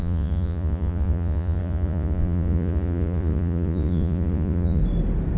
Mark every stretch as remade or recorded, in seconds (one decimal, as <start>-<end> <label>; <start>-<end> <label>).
0.0-4.8 remade; 4.8-5.4 recorded